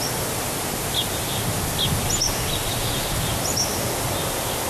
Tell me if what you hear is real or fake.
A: real